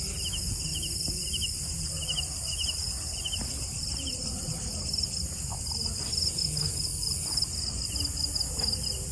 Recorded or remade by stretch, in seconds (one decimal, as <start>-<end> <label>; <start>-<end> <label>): 0.0-9.1 recorded